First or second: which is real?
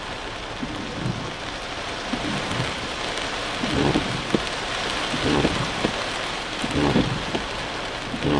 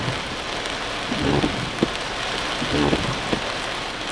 second